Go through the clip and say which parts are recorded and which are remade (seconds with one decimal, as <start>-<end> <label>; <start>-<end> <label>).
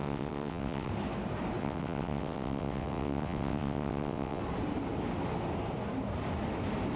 0.0-0.9 remade; 0.9-1.6 recorded; 1.6-4.4 remade; 4.4-7.0 recorded